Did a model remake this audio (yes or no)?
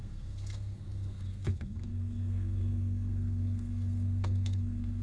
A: yes